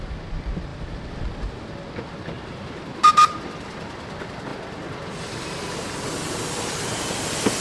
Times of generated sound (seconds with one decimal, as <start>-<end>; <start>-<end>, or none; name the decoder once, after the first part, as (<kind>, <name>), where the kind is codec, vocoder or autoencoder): none